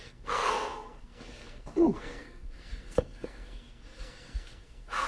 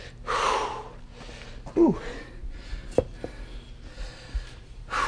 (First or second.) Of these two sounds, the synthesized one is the first